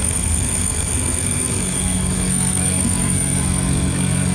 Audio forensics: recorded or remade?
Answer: remade